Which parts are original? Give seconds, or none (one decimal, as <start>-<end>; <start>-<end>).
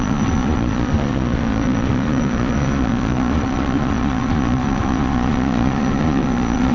none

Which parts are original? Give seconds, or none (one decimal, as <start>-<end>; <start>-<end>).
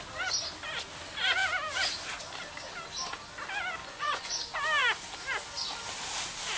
0.0-3.8; 4.3-6.6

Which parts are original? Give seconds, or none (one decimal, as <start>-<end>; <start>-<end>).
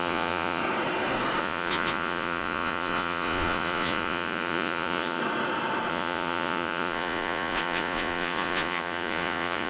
0.6-1.4; 5.2-5.9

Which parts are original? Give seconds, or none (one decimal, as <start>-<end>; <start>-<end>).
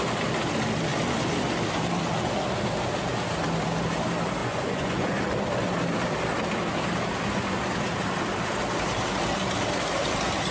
0.0-4.4; 5.2-10.5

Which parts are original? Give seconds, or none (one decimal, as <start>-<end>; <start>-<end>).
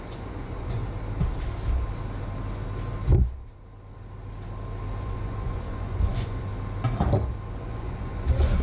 0.8-5.0; 6.5-7.5